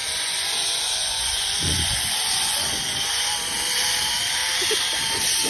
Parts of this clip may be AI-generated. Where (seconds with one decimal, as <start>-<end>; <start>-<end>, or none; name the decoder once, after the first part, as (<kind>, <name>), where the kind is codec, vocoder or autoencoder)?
0.0-3.3 (vocoder, Vocos)